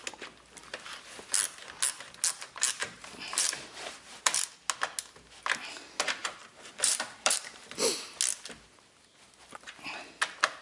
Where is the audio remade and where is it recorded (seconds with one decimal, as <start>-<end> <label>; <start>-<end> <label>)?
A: 0.0-2.8 recorded; 2.8-4.4 remade; 4.4-6.2 recorded; 6.2-7.8 remade; 7.8-10.6 recorded